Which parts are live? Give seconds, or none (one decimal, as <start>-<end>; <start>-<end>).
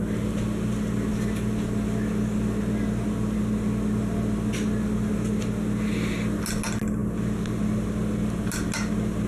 0.0-9.3